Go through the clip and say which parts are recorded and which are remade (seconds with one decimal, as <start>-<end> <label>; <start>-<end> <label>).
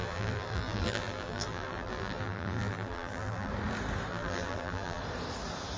0.0-3.5 remade; 3.5-4.1 recorded; 4.1-5.0 remade; 5.0-5.8 recorded